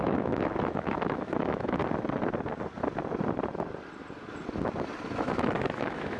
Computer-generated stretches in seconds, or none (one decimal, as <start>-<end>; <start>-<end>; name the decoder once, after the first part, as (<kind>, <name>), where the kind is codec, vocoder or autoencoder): 0.0-1.8 (autoencoder, DAC-VAE); 5.1-6.2